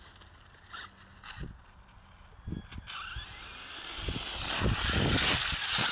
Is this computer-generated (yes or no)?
no